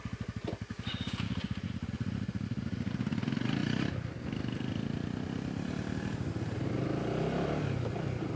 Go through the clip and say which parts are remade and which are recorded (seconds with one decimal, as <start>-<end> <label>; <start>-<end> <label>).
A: 0.0-0.7 recorded; 0.7-1.3 remade; 1.3-8.4 recorded